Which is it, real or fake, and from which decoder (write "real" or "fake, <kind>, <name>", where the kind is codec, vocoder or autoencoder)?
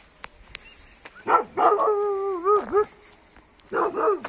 real